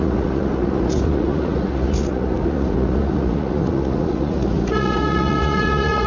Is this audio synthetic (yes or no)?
yes